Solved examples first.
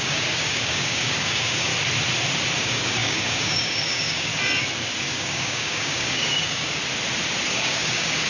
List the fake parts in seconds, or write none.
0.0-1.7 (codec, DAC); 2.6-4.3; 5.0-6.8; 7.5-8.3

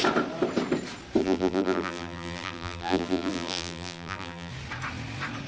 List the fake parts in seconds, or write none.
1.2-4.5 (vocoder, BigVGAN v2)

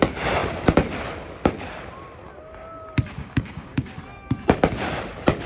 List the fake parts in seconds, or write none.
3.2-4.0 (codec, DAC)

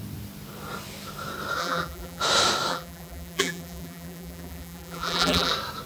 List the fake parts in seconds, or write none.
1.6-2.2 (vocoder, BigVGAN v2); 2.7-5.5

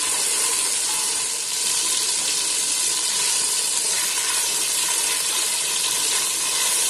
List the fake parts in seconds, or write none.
2.0-6.1 (vocoder, BigVGAN v2)

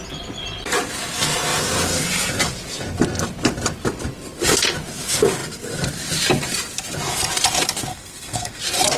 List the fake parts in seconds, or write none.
7.9-8.6 (codec, SNAC)

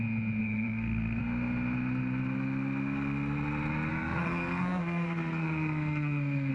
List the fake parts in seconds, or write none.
0.4-1.2 (codec, SNAC); 3.9-6.5

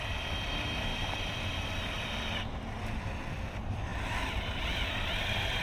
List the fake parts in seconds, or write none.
0.9-1.6 (vocoder, BigVGAN v2)